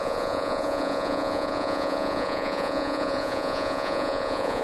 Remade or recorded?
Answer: remade